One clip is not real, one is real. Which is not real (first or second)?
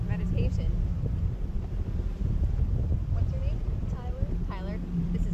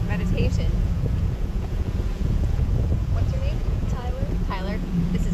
second